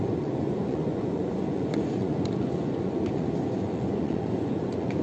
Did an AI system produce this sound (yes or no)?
yes